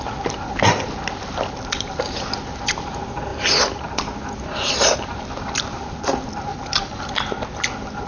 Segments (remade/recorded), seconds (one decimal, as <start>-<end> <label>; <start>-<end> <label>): 0.0-6.5 recorded; 6.5-7.0 remade; 7.0-8.1 recorded